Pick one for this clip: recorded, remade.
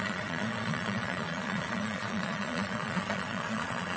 remade